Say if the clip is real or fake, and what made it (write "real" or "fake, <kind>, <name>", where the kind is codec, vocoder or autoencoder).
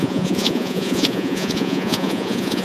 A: fake, vocoder, Vocos